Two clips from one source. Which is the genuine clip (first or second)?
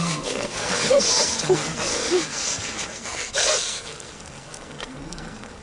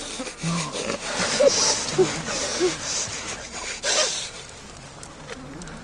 second